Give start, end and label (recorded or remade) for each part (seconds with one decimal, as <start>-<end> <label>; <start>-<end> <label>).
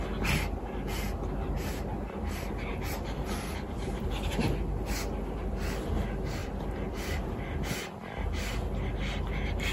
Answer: 0.0-2.7 recorded; 2.7-4.4 remade; 4.4-6.4 recorded; 6.4-7.4 remade; 7.4-9.7 recorded